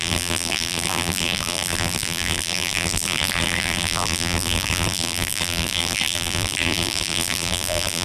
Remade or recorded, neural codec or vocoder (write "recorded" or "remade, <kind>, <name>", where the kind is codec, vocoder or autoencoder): remade, vocoder, BigVGAN v2